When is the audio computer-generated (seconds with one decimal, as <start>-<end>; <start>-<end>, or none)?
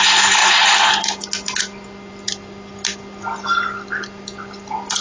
none